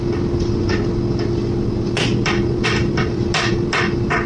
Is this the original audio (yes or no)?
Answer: yes